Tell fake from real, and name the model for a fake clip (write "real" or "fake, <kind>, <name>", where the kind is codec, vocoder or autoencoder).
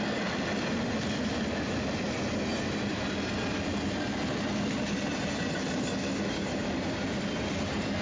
real